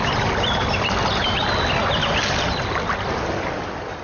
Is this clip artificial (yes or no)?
no